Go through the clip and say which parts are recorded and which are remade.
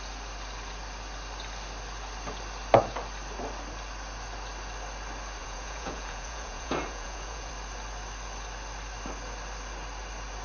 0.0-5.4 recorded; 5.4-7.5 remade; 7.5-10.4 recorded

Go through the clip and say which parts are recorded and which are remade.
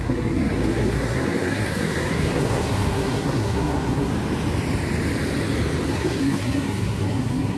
0.0-4.1 remade; 4.1-5.9 recorded; 5.9-7.6 remade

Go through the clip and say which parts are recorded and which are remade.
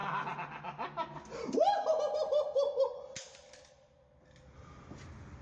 0.0-5.4 recorded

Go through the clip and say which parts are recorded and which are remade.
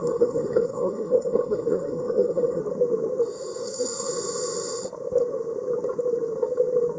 0.0-2.6 remade; 2.6-3.6 recorded; 3.6-4.1 remade; 4.1-7.0 recorded